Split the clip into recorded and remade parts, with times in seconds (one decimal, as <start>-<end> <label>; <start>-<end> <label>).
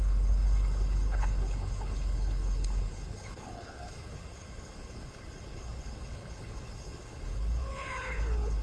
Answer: 0.0-8.6 remade